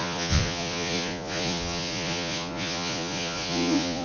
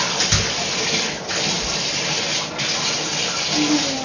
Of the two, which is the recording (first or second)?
second